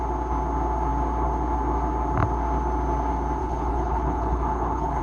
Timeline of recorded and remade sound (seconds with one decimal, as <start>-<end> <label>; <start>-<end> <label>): 0.0-3.4 recorded; 3.4-5.0 remade